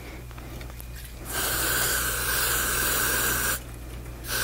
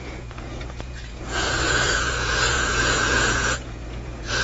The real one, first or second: first